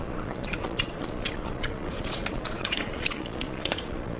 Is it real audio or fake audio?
fake